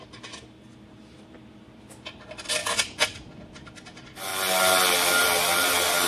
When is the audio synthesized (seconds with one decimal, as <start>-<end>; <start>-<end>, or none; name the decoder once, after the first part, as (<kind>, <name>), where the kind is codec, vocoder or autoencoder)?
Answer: 0.0-2.6 (vocoder, BigVGAN v2); 3.5-4.3; 5.1-6.1